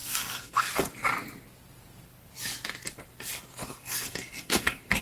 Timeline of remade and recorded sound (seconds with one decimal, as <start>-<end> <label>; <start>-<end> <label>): 0.0-0.7 remade; 0.7-3.8 recorded; 3.8-5.0 remade

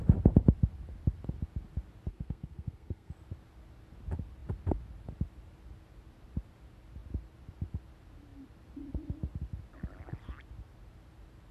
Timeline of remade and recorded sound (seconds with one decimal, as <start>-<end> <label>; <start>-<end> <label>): 0.0-2.1 recorded; 2.1-3.1 remade; 3.1-11.5 recorded

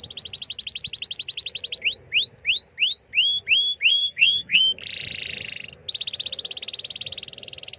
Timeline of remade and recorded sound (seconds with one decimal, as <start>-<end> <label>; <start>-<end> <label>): 0.0-3.9 recorded; 3.9-4.6 remade; 4.6-7.8 recorded

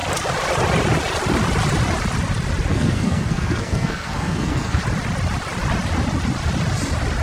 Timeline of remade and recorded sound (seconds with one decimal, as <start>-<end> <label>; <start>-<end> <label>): 0.0-2.7 recorded; 2.7-4.8 remade; 4.8-7.2 recorded

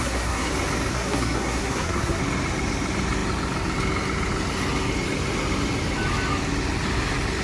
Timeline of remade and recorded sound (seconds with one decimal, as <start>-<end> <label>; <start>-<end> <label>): 0.0-0.5 remade; 0.5-0.9 recorded; 0.9-2.2 remade; 2.2-7.4 recorded

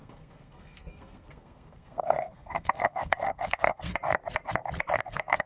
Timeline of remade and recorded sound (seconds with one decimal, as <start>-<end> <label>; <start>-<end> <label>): 0.0-3.9 remade; 3.9-5.0 recorded; 5.0-5.5 remade

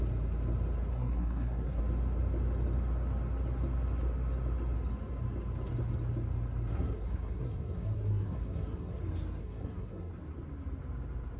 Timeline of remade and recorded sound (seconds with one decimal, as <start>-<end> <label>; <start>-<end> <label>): 0.0-0.9 recorded; 0.9-1.8 remade; 1.8-6.7 recorded; 6.7-9.0 remade; 9.0-9.4 recorded; 9.4-10.1 remade; 10.1-11.4 recorded